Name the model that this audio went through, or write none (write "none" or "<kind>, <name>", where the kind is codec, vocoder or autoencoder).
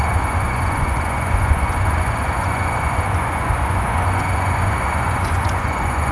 vocoder, Vocos